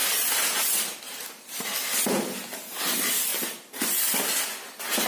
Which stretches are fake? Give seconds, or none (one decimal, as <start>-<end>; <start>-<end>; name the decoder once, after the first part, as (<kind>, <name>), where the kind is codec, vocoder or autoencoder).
0.0-1.0 (vocoder, BigVGAN v2); 3.3-3.8